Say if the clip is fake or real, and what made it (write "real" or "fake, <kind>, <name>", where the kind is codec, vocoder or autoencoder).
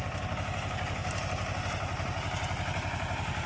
real